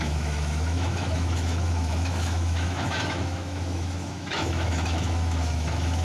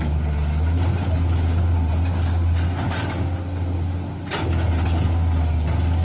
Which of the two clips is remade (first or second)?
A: first